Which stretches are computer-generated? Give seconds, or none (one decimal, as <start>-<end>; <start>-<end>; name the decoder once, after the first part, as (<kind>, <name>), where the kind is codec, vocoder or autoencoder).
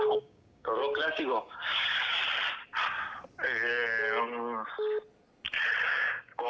0.0-2.2 (codec, DAC); 5.8-6.5